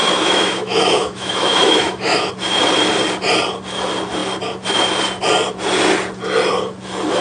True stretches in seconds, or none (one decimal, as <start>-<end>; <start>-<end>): 2.3-7.2